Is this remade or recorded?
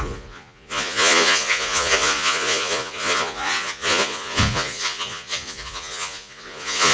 remade